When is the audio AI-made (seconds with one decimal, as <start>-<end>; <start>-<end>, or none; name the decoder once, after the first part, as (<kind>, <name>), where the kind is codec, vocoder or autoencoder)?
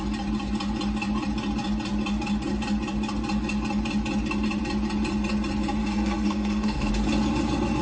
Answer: 5.8-6.9 (codec, SNAC)